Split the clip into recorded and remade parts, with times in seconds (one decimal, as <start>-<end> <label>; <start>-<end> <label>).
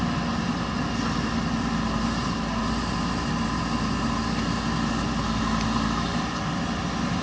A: 0.0-7.2 recorded